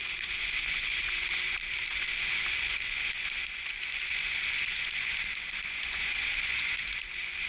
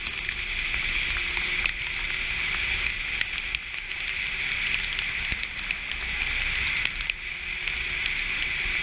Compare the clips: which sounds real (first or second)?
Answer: second